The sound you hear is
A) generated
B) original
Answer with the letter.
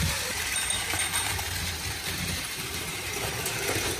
A